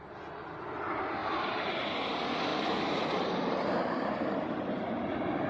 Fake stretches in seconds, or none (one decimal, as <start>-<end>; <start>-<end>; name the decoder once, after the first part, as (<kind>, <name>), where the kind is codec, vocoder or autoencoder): 1.2-1.8 (vocoder, BigVGAN v2); 2.5-5.1